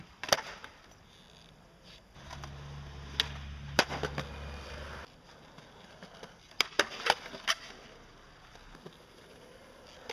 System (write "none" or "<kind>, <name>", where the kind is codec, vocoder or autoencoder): none